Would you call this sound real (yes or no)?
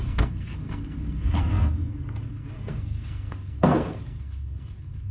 no